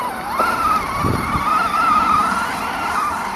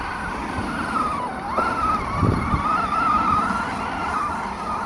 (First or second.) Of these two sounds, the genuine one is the first